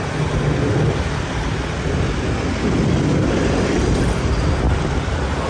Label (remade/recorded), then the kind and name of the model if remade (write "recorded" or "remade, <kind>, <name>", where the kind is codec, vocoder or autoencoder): recorded